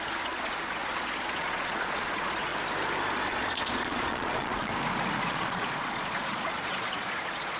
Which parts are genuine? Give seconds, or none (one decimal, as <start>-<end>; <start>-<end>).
2.5-3.3; 4.7-5.3